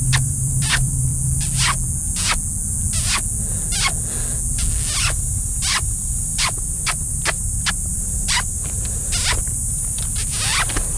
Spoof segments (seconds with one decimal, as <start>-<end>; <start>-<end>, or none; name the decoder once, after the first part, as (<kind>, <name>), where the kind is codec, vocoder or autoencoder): 0.0-1.1 (vocoder, BigVGAN v2); 5.0-11.0